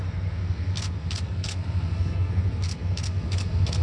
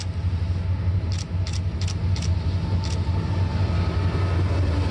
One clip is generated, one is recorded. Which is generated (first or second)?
first